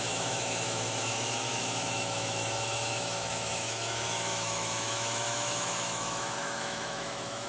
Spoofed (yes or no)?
yes